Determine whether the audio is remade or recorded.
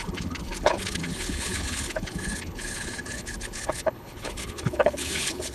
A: remade